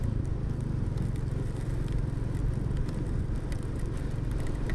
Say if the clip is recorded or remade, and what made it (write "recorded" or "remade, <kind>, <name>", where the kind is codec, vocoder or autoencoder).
recorded